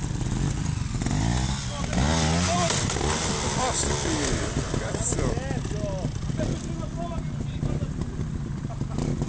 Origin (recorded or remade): recorded